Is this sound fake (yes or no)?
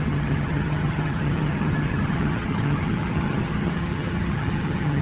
yes